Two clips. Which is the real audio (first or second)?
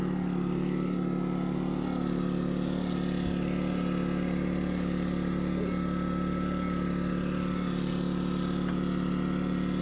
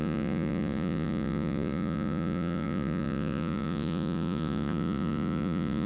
first